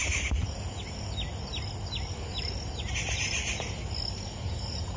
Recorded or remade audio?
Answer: recorded